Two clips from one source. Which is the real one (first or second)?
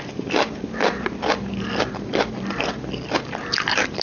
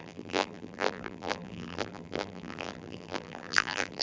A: first